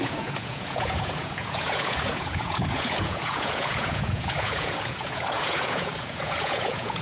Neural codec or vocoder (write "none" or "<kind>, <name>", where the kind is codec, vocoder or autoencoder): vocoder, Vocos